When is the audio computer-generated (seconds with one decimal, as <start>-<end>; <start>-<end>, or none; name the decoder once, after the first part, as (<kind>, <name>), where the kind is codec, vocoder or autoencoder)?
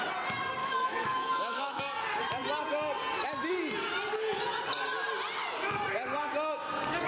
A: 0.6-1.8 (autoencoder, DAC-VAE)